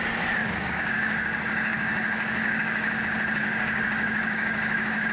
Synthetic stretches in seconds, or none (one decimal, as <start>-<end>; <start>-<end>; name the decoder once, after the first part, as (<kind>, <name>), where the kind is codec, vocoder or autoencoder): 0.4-3.0 (codec, DAC); 3.4-5.1